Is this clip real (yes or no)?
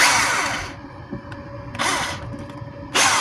yes